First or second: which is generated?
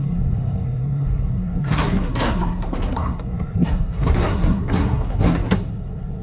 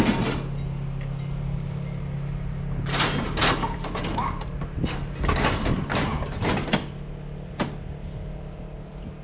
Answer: first